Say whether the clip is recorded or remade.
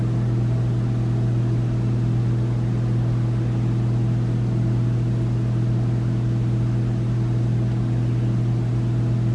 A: recorded